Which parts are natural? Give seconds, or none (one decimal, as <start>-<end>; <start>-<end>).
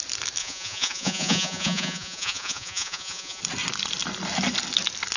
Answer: 0.0-0.4; 3.4-5.2